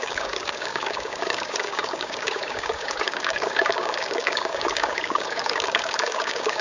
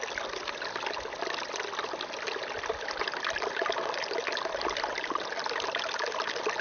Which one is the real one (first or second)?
second